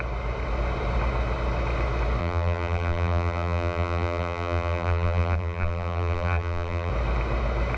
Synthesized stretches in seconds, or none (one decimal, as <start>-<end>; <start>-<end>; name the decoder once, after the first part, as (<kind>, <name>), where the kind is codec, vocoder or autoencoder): 2.2-6.9 (vocoder, BigVGAN v2)